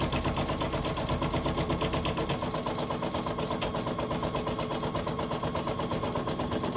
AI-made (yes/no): no